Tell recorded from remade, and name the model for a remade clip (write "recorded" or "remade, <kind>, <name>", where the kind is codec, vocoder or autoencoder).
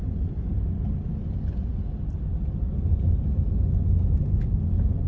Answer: recorded